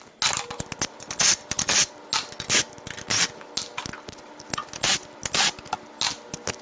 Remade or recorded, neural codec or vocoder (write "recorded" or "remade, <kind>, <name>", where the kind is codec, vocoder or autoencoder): recorded